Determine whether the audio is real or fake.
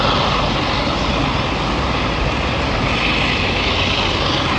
real